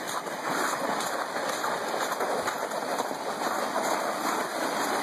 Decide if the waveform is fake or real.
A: real